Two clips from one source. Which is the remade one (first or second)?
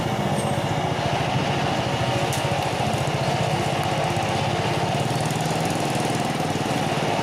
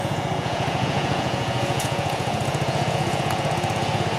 second